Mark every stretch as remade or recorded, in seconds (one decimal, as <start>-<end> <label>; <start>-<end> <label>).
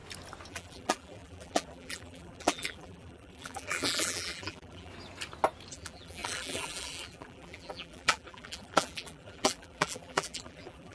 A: 0.0-0.5 recorded; 0.5-4.9 remade; 4.9-5.7 recorded; 5.7-10.9 remade